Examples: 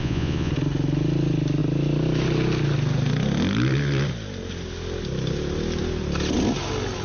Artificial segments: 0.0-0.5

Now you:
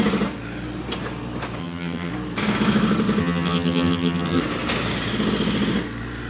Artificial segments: 1.6-2.1; 3.2-4.4

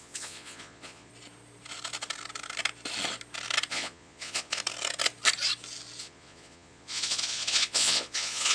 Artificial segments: 0.0-1.1; 3.7-4.6; 6.0-8.5

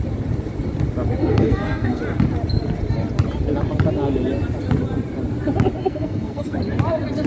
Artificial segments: 1.2-2.0; 5.8-6.6

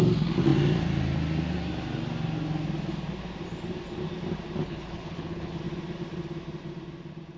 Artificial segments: 4.6-5.6